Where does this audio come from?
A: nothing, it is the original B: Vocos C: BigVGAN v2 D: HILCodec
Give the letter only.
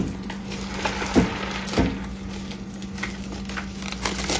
A